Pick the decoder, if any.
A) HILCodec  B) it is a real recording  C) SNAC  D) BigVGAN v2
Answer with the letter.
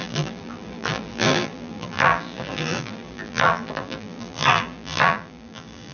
D